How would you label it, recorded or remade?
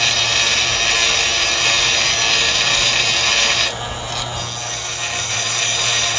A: recorded